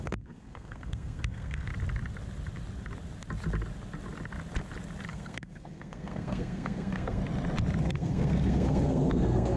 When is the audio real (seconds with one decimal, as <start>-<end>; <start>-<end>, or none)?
1.7-5.1; 7.2-7.8